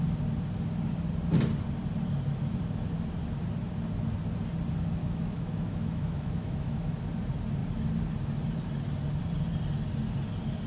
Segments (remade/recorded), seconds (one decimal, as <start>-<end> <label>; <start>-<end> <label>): 0.0-5.0 recorded; 5.0-7.0 remade; 7.0-10.7 recorded